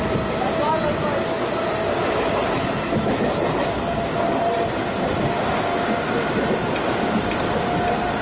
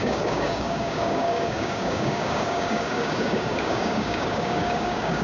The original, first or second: first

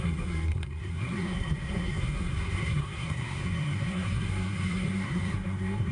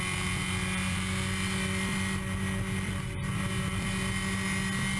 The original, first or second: second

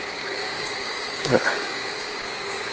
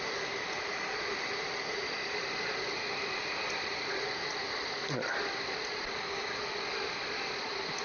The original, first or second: second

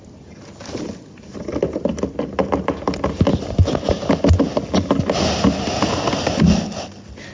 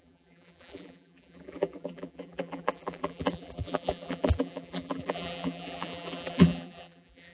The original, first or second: first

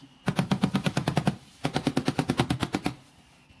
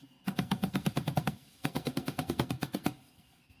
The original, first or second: first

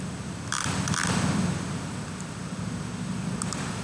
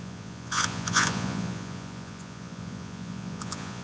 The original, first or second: first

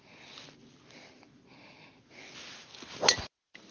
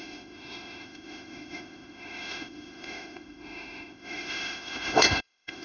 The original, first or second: first